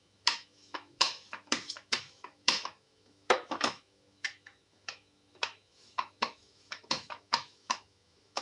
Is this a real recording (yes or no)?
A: no